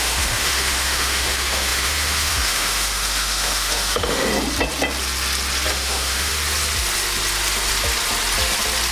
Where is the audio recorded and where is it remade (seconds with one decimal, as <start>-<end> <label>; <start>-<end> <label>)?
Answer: 0.0-4.3 remade; 4.3-5.7 recorded; 5.7-6.3 remade; 6.3-8.9 recorded

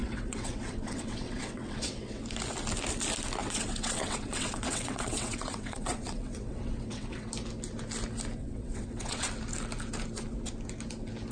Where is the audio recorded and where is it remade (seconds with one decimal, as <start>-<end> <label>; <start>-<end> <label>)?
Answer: 0.0-2.2 remade; 2.2-3.4 recorded; 3.4-7.3 remade; 7.3-8.4 recorded; 8.4-9.3 remade; 9.3-11.3 recorded

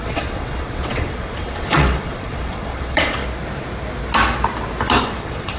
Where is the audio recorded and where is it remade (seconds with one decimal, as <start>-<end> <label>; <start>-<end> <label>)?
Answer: 0.0-3.2 remade; 3.2-5.0 recorded; 5.0-5.6 remade

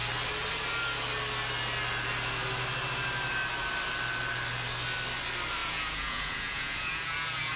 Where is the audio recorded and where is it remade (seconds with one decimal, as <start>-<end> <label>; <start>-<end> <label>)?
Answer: 0.0-5.6 recorded; 5.6-7.6 remade

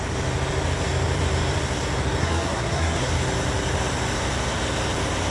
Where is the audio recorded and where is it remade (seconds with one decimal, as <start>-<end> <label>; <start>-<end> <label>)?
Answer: 0.0-2.2 recorded; 2.2-3.1 remade; 3.1-5.3 recorded

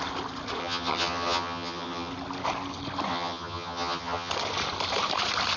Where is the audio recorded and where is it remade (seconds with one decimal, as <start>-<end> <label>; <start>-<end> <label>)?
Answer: 0.0-0.6 recorded; 0.6-2.1 remade; 2.1-3.1 recorded; 3.1-4.3 remade; 4.3-5.6 recorded

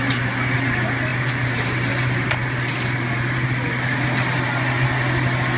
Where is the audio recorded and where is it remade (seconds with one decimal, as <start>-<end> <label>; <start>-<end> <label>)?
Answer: 0.0-5.6 recorded

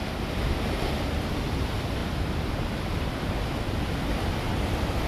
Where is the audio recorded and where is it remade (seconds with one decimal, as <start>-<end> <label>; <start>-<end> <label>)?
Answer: 0.0-5.1 recorded